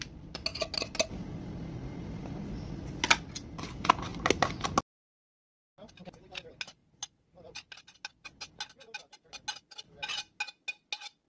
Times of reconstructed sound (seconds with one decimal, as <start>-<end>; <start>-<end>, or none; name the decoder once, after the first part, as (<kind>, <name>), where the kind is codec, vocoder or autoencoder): 6.8-8.1 (vocoder, BigVGAN v2)